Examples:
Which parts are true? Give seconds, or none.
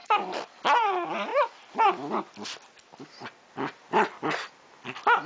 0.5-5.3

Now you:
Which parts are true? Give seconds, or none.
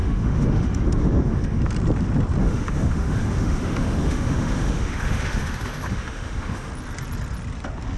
1.6-2.4; 6.7-8.0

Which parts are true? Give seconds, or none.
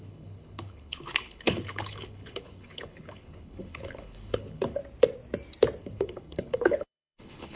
4.8-5.8